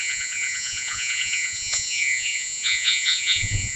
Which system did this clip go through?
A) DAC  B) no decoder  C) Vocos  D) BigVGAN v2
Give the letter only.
C